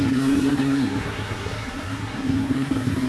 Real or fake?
fake